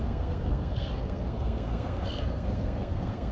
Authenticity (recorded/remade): remade